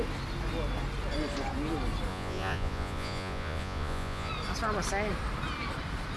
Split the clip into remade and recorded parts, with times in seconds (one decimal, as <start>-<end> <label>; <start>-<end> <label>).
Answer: 0.0-2.1 recorded; 2.1-4.3 remade; 4.3-6.2 recorded